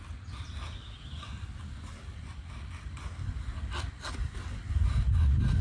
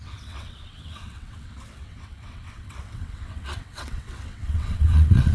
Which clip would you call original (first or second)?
first